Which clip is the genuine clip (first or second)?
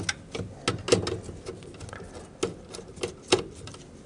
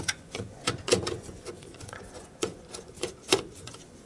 first